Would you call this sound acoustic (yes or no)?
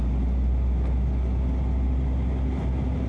yes